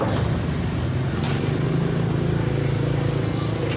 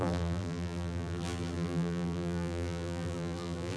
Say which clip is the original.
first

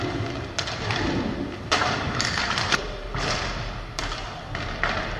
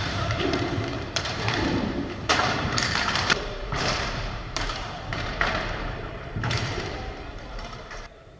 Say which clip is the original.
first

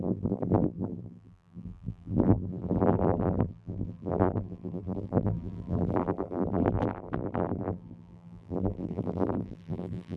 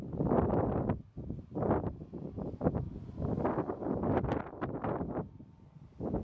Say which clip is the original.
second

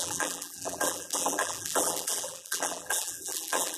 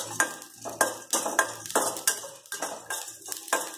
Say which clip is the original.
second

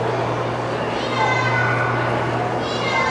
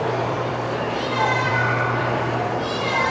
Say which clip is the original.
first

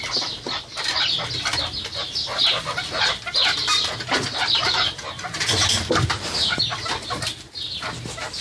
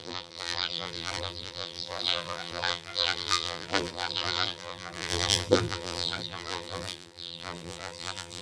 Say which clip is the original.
first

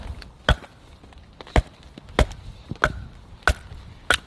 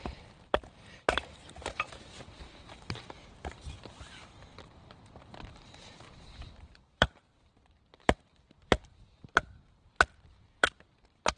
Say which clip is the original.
first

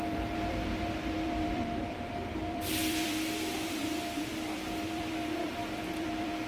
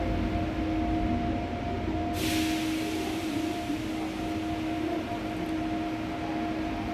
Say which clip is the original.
second